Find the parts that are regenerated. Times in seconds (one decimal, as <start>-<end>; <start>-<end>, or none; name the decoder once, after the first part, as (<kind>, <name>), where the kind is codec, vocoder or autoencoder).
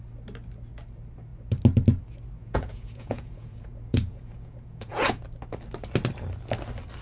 2.4-5.2 (vocoder, Vocos)